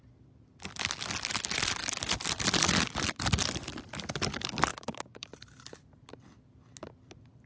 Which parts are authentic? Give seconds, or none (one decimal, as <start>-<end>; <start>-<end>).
0.0-4.7; 5.3-7.5